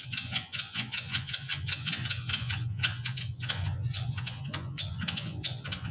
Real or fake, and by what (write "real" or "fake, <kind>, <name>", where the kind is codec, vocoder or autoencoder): fake, vocoder, Vocos